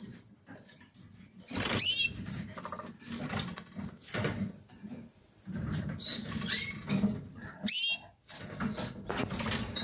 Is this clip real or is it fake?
real